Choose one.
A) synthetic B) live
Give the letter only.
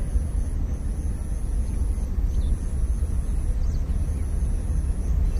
B